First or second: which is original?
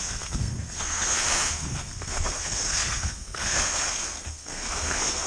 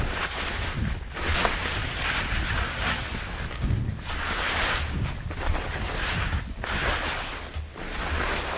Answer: second